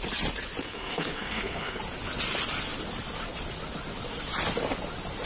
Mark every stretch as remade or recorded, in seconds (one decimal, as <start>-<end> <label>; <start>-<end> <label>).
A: 0.0-0.6 recorded; 0.6-1.8 remade; 1.8-5.3 recorded